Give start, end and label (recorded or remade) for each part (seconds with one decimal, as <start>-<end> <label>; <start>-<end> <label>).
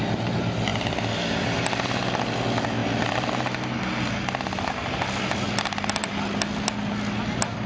0.0-0.7 recorded; 0.7-1.6 remade; 1.6-2.8 recorded; 2.8-3.8 remade; 3.8-7.7 recorded